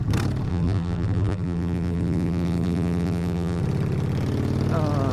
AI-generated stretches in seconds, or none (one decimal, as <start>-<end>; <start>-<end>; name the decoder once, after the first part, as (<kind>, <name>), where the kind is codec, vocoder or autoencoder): 0.5-3.6 (vocoder, BigVGAN v2)